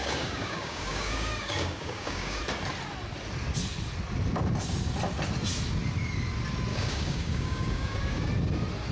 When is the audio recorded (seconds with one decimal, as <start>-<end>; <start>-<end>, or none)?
2.4-6.7; 8.3-8.9

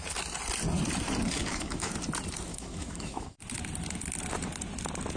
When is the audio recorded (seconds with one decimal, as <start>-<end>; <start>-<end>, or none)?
0.0-1.4; 1.9-2.5; 3.4-5.2

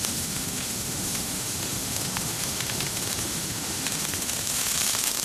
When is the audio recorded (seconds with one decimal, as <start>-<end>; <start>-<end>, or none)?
none

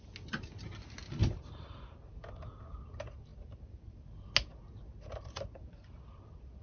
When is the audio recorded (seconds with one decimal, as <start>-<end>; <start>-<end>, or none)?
0.0-1.2; 2.1-6.6

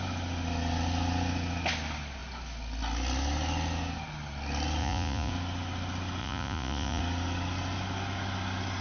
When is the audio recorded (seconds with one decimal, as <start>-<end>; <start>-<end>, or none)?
0.0-4.8; 5.3-6.2; 7.0-8.8

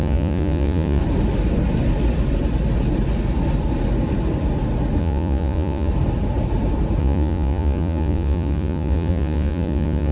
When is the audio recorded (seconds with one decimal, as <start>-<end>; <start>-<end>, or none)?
1.0-5.0; 5.9-7.0

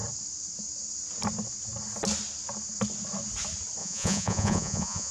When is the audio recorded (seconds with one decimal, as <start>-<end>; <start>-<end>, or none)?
0.0-3.8

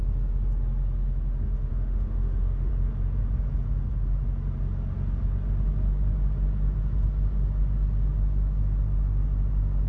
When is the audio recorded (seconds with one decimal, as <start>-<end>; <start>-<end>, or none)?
0.0-1.7; 2.7-9.9